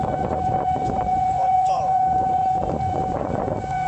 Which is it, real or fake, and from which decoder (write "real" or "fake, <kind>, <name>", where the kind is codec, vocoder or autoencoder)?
fake, vocoder, Vocos